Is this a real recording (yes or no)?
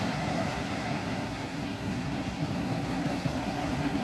no